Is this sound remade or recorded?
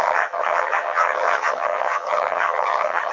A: remade